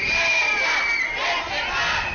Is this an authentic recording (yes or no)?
yes